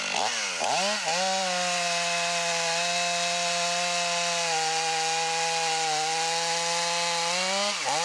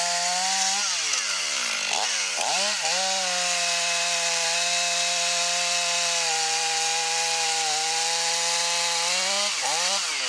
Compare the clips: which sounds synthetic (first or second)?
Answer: second